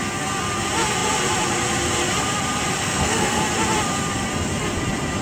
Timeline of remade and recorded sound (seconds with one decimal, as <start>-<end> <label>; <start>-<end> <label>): 0.0-2.8 recorded; 2.8-3.4 remade; 3.4-5.2 recorded